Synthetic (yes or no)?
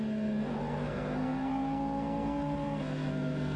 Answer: yes